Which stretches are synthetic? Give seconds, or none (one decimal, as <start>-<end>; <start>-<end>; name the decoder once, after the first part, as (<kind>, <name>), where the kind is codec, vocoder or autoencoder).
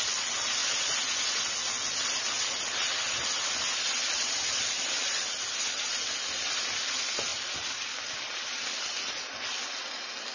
none